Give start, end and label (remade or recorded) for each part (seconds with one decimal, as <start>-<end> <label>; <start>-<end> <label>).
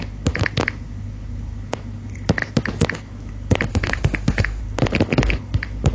0.0-3.7 recorded; 3.7-4.6 remade; 4.6-5.9 recorded